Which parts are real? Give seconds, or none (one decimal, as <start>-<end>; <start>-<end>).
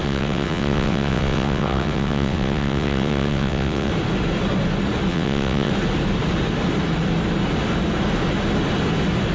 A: 3.9-5.1; 5.7-9.3